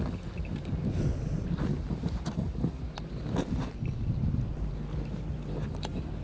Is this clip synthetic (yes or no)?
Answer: no